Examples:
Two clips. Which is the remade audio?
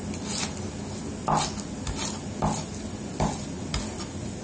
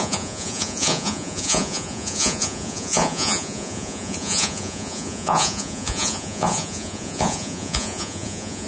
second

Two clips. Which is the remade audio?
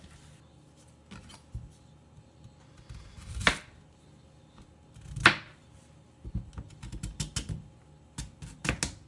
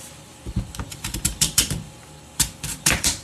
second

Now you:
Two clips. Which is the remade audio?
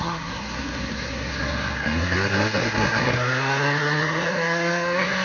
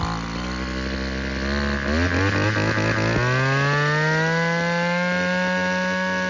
first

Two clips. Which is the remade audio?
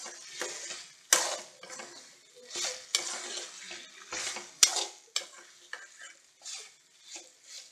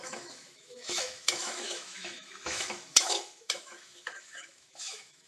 second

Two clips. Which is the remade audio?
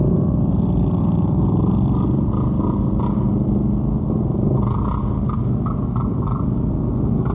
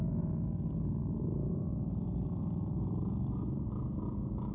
second